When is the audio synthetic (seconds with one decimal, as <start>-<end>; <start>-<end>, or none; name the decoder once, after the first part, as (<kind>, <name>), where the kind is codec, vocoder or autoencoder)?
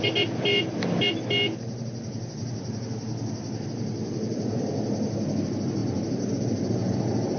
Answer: none